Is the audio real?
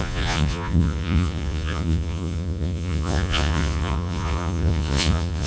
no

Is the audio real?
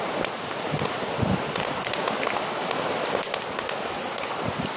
yes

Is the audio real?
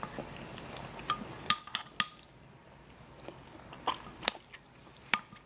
yes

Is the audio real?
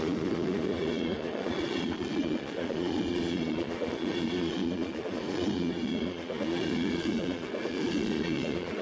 no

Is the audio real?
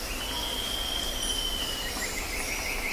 yes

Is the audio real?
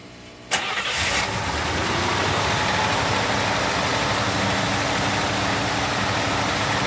yes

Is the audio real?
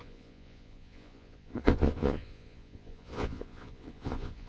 no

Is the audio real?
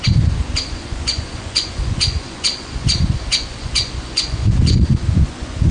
no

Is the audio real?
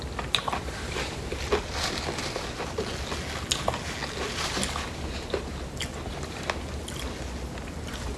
yes